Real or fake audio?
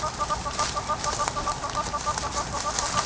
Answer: real